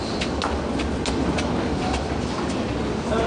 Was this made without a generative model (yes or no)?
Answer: yes